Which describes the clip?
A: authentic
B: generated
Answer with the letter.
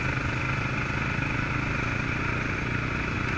A